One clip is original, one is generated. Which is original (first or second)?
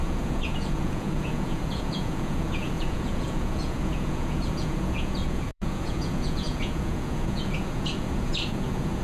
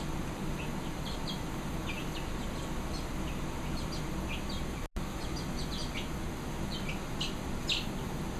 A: second